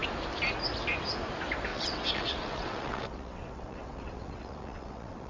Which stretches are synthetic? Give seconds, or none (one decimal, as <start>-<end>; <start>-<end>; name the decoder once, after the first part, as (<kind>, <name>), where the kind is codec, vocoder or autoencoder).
1.7-5.3 (vocoder, WaveNeXt)